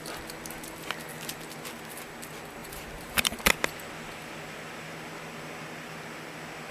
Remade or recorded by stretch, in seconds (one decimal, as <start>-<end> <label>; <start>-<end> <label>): 0.0-2.6 recorded; 2.6-3.4 remade; 3.4-6.7 recorded